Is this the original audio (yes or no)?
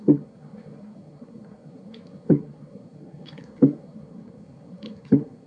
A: no